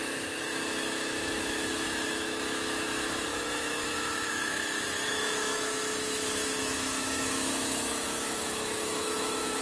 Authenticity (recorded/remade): remade